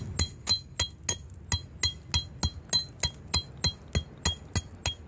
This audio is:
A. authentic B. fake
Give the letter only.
A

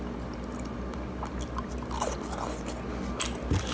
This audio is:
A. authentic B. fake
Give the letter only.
A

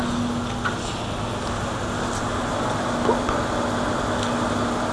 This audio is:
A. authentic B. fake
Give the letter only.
A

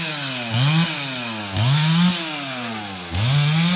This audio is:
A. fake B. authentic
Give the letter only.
B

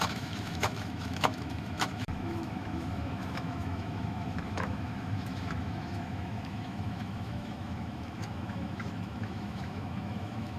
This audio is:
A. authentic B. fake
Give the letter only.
B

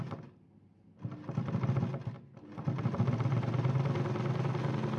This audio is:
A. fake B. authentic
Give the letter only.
B